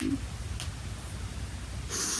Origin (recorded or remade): recorded